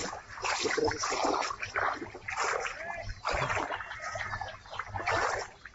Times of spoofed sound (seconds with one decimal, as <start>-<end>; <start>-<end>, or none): none